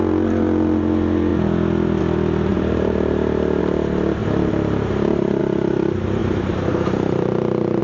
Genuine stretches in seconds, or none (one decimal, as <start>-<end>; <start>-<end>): 0.0-2.5; 3.6-4.2; 5.4-6.2